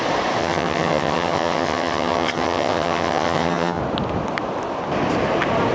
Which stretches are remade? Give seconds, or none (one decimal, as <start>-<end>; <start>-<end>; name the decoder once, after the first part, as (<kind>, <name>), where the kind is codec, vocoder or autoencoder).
0.4-3.8 (vocoder, HiFi-GAN)